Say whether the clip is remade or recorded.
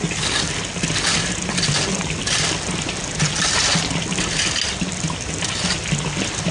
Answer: recorded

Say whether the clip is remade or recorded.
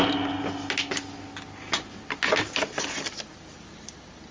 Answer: recorded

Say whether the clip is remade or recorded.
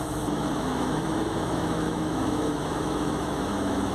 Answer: remade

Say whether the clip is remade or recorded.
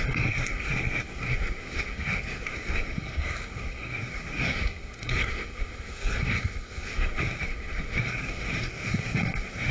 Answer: remade